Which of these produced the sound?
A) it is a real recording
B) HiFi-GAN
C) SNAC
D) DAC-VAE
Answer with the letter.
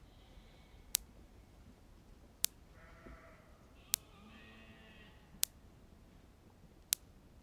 A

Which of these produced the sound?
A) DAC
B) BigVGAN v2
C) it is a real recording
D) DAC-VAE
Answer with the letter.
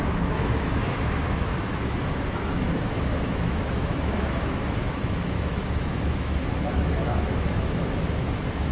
D